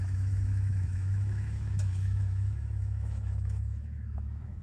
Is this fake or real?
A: fake